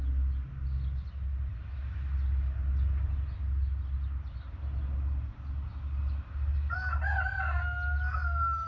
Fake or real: real